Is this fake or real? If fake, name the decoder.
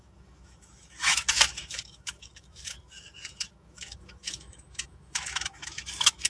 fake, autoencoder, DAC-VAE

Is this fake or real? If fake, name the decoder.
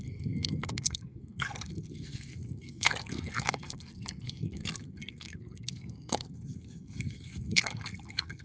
fake, codec, SNAC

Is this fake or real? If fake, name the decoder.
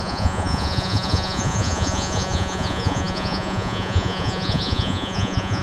fake, vocoder, Vocos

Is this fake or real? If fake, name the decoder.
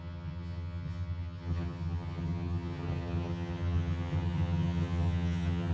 fake, vocoder, HiFi-GAN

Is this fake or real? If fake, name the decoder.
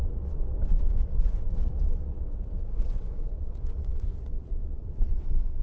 fake, vocoder, WaveNeXt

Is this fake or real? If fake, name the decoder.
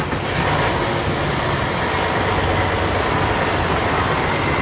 real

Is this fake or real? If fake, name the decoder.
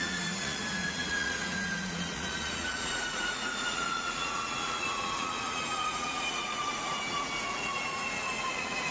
fake, vocoder, Vocos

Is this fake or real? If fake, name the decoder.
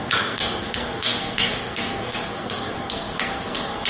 fake, codec, SNAC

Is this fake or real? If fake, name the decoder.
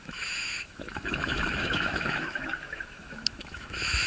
fake, autoencoder, DAC-VAE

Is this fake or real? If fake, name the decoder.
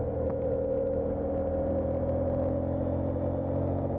real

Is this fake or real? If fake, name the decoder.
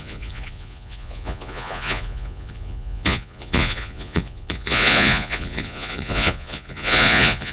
fake, vocoder, Vocos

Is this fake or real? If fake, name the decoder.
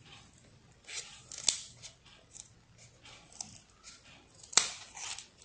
real